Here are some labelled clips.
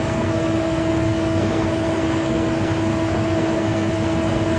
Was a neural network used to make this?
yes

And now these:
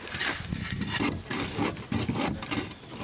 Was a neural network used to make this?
no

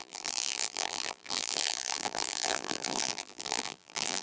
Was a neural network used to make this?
yes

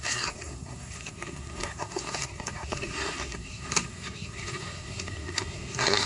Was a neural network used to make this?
yes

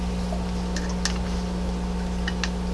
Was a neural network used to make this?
no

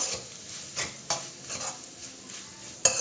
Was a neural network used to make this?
no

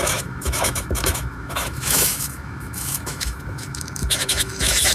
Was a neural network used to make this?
yes